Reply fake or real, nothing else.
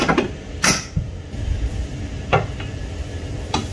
real